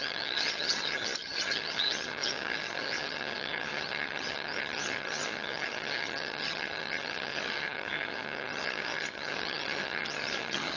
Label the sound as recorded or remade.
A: remade